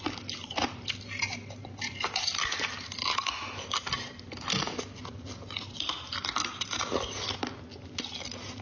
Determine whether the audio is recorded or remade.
recorded